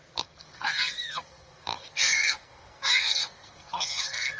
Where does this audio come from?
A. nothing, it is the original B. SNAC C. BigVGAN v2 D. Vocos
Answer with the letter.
B